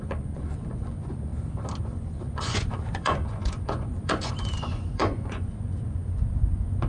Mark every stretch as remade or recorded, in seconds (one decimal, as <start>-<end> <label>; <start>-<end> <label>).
0.0-1.3 remade; 1.3-1.8 recorded; 1.8-6.9 remade